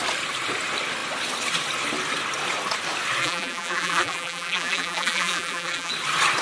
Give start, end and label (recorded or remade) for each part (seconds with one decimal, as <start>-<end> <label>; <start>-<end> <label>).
0.0-3.2 recorded; 3.2-5.9 remade; 5.9-6.4 recorded

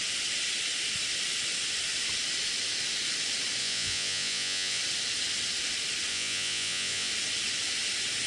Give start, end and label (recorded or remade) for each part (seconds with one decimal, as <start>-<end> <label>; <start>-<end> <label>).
0.0-3.6 recorded; 3.6-4.8 remade; 4.8-6.1 recorded; 6.1-7.1 remade; 7.1-8.3 recorded

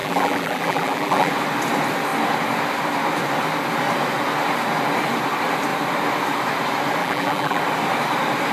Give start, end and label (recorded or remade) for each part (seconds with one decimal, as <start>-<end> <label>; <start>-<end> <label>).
0.0-1.3 remade; 1.3-7.0 recorded; 7.0-7.6 remade; 7.6-8.5 recorded

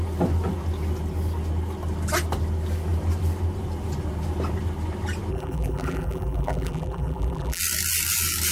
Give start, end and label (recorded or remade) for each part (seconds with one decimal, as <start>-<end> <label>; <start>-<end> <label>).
0.0-5.3 recorded; 5.3-7.6 remade; 7.6-8.5 recorded